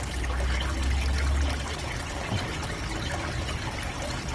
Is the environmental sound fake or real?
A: real